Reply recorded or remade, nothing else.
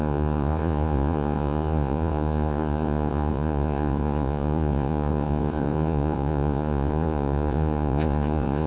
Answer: remade